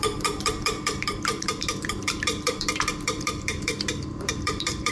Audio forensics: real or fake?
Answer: fake